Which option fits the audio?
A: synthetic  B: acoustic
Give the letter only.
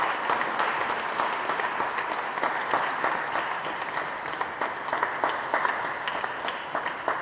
B